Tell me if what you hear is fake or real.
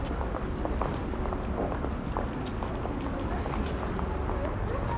real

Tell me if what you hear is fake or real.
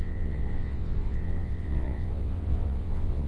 fake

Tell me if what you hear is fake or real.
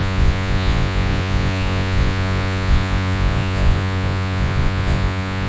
fake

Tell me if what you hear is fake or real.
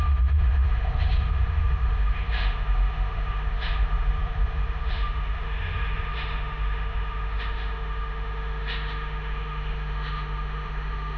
fake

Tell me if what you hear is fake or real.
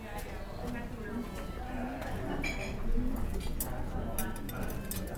real